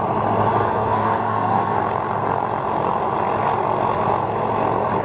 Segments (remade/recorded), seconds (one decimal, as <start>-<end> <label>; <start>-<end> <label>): 0.0-0.5 recorded; 0.5-1.8 remade; 1.8-5.0 recorded